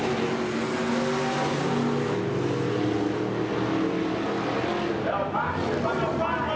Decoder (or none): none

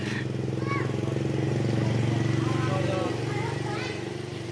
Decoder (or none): none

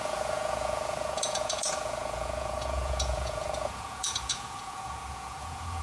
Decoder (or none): vocoder, Vocos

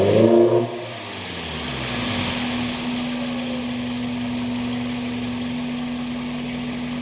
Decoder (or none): none